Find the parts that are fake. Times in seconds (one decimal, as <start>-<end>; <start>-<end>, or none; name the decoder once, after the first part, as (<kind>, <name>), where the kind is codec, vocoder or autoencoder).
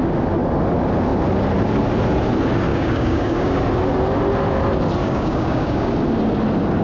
2.7-3.6 (codec, DAC); 5.0-5.9